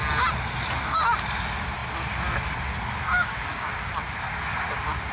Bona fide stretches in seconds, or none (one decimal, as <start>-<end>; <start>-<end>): 0.0-3.1; 3.7-5.1